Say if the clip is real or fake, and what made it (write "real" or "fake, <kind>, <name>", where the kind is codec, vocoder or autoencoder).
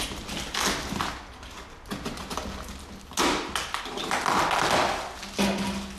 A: real